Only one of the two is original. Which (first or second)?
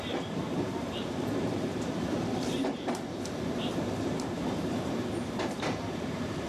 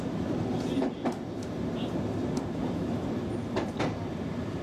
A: second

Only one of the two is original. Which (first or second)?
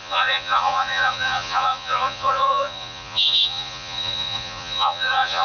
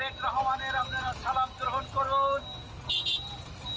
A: second